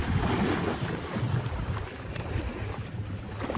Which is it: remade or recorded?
remade